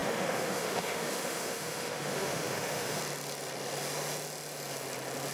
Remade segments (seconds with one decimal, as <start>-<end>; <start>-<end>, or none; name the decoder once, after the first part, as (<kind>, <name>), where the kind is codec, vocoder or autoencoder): 0.0-3.0 (autoencoder, DAC-VAE)